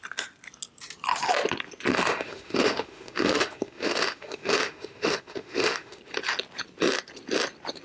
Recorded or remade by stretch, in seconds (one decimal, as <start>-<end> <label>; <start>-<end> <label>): 0.0-1.9 recorded; 1.9-6.0 remade; 6.0-7.8 recorded